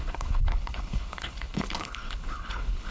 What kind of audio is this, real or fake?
fake